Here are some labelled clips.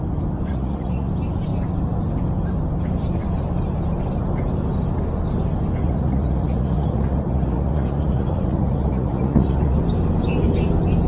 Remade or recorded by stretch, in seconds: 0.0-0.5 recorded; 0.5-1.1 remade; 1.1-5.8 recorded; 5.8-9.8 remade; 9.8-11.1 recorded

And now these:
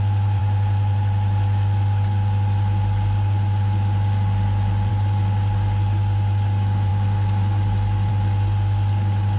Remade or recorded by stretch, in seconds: 0.0-9.4 recorded

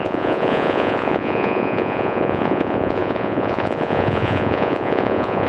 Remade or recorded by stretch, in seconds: 0.0-5.5 remade

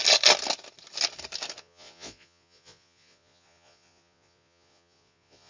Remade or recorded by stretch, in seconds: 0.0-1.6 recorded; 1.6-5.5 remade

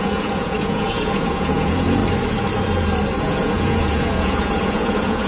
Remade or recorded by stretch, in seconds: 0.0-2.0 remade; 2.0-3.2 recorded; 3.2-5.3 remade

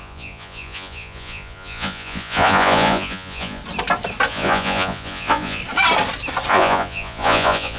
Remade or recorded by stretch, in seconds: 0.0-3.6 remade; 3.6-4.3 recorded; 4.3-5.6 remade; 5.6-6.5 recorded; 6.5-7.8 remade